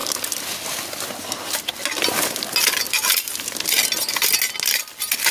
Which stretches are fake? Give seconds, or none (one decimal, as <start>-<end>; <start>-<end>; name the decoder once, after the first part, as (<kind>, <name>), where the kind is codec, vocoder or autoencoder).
none